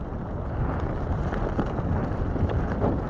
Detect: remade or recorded recorded